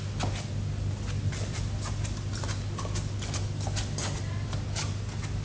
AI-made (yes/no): no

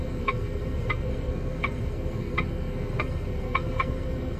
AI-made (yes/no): yes